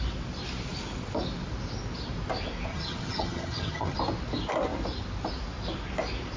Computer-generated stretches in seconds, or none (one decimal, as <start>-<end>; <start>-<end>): 2.7-4.0